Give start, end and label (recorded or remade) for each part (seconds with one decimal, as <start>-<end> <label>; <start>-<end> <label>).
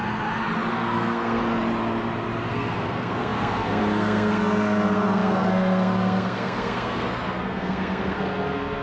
0.0-0.7 recorded; 0.7-1.4 remade; 1.4-2.5 recorded; 2.5-8.8 remade